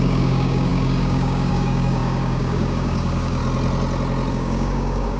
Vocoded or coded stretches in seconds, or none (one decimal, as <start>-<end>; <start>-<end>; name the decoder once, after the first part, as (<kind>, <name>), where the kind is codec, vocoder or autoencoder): 0.0-3.4 (codec, DAC); 4.3-5.2